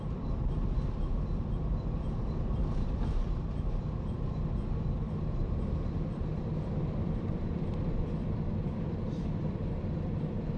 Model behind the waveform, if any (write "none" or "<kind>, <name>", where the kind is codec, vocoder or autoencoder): vocoder, BigVGAN v2